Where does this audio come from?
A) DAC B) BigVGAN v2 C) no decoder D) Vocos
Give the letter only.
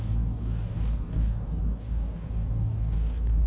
A